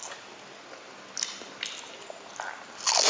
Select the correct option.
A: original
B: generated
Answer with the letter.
A